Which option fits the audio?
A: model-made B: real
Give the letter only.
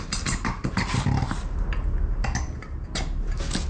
B